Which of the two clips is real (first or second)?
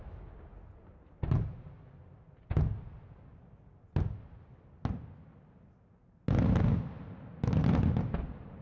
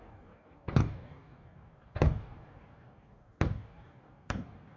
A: first